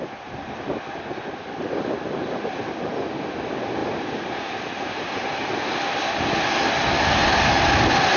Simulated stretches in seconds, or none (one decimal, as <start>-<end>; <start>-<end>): none